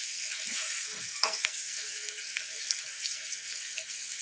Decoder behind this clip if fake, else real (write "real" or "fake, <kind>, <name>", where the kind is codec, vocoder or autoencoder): fake, codec, SNAC